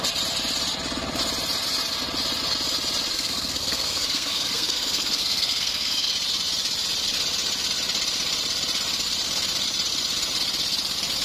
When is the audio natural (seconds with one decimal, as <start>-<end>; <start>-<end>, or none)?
0.0-3.1; 6.1-11.2